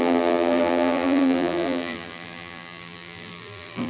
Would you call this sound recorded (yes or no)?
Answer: no